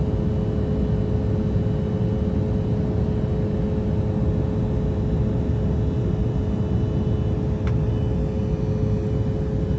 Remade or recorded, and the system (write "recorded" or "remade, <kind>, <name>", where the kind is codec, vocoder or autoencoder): recorded